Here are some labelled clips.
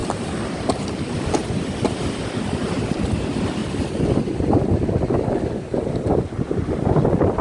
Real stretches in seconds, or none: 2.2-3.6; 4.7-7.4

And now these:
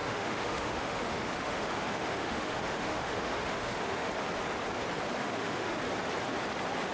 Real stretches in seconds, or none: 4.1-5.2; 5.8-6.9

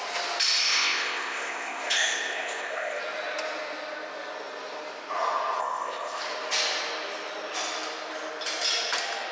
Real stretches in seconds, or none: 0.0-0.6; 3.0-5.6; 6.2-9.3

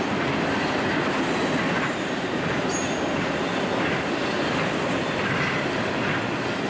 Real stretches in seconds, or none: 0.0-6.7

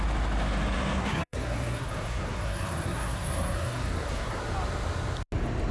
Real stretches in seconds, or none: 0.0-1.0; 4.4-5.7

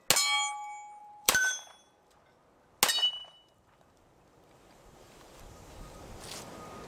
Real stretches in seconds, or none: 0.0-1.0; 2.2-3.2; 6.0-6.9

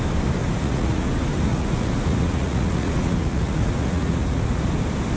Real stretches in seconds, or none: 0.0-0.4; 1.1-1.5; 4.6-5.2